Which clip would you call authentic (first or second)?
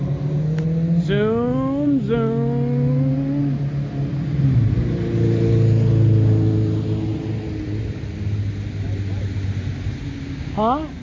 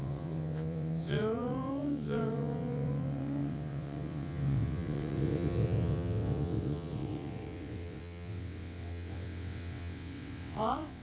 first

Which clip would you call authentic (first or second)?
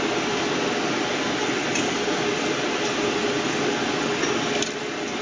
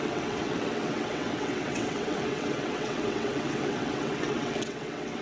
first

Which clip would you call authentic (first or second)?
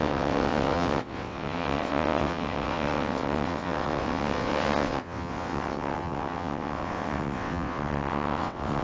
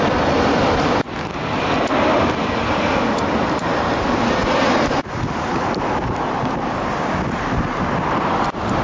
second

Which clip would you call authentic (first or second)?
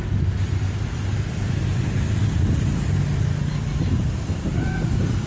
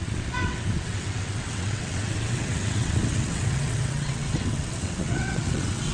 first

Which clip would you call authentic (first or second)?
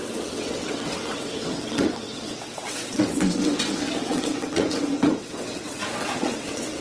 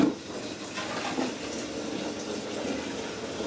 second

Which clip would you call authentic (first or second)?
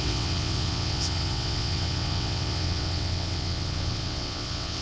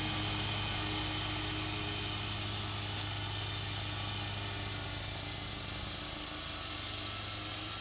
second